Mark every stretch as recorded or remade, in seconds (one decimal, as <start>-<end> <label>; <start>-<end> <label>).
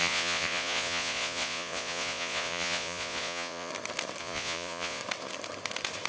0.0-3.7 remade; 3.7-4.2 recorded; 4.2-5.0 remade; 5.0-6.1 recorded